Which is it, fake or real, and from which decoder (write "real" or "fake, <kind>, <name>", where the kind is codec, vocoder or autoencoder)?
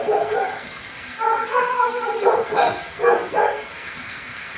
fake, codec, SNAC